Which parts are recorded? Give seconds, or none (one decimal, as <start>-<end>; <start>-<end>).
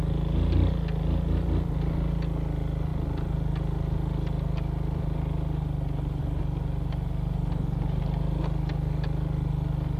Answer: 0.0-10.0